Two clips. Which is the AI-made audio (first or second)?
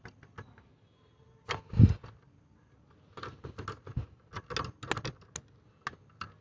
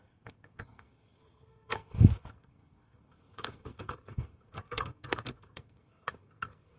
second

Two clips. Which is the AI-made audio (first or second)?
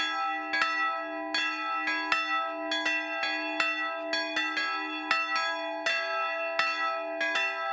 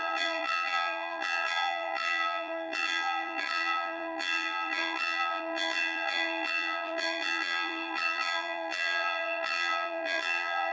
second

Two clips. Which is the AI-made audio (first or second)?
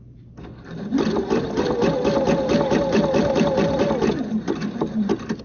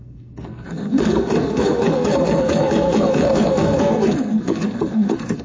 second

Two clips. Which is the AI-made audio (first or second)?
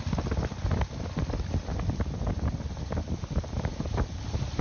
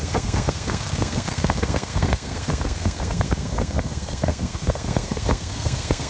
second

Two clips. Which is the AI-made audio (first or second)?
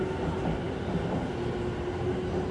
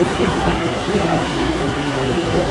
second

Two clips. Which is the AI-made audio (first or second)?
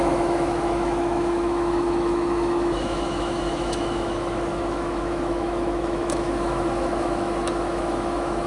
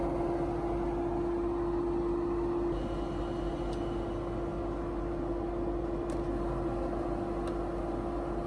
first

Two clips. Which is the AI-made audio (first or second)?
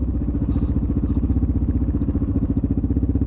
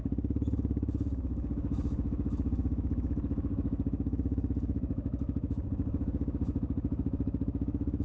second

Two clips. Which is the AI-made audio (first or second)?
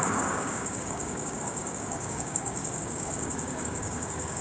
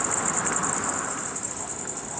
first